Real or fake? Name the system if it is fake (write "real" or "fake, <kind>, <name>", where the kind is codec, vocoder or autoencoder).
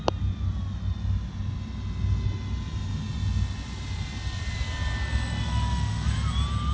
real